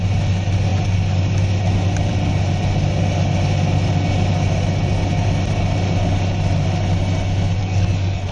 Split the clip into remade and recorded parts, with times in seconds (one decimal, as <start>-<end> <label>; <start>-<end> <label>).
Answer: 0.0-7.6 recorded; 7.6-8.3 remade